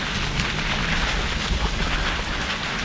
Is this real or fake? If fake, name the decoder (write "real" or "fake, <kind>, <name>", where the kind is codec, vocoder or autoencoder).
real